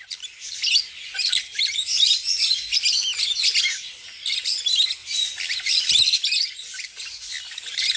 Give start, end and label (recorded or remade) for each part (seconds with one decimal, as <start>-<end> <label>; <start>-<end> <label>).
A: 0.0-0.6 remade; 0.6-1.1 recorded; 1.1-3.1 remade; 3.1-3.6 recorded; 3.6-8.0 remade